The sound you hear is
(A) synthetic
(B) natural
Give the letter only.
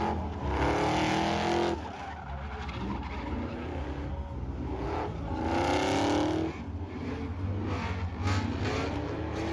B